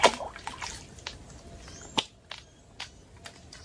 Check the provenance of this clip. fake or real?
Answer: real